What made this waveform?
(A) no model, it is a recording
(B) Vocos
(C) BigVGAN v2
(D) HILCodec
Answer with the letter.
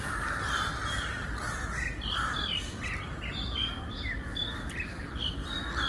A